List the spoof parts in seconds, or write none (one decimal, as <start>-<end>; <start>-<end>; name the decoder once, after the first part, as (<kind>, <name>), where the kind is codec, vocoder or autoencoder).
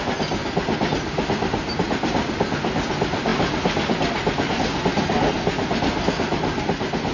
none